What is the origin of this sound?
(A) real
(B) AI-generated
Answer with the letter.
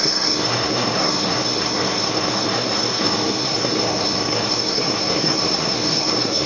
B